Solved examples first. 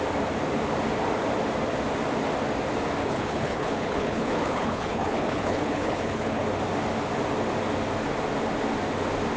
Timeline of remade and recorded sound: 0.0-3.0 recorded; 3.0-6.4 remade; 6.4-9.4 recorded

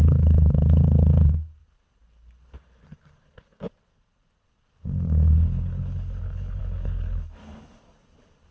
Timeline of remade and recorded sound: 0.0-8.5 remade

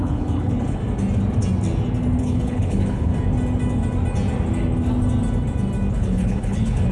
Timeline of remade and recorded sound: 0.0-0.8 remade; 0.8-2.2 recorded; 2.2-3.1 remade; 3.1-5.9 recorded; 5.9-6.9 remade

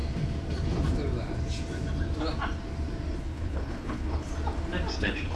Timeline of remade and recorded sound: 0.0-3.2 recorded; 3.2-4.3 remade; 4.3-5.0 recorded; 5.0-5.4 remade

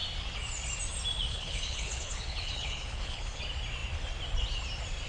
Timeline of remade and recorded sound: 0.0-1.3 recorded; 1.3-3.4 remade; 3.4-5.1 recorded